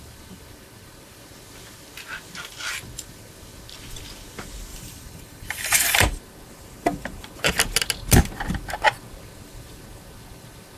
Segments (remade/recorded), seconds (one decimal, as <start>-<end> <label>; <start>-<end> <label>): 0.0-4.7 recorded; 4.7-6.2 remade; 6.2-10.8 recorded